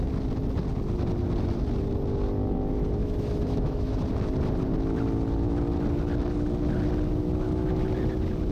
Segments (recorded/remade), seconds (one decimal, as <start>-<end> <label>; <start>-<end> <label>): 0.0-3.0 recorded; 3.0-4.0 remade; 4.0-8.5 recorded